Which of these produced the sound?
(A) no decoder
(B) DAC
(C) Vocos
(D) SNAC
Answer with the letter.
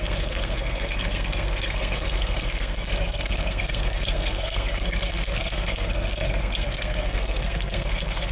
D